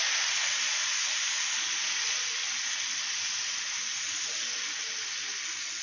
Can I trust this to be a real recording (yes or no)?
yes